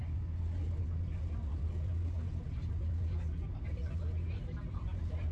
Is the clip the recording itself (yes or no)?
yes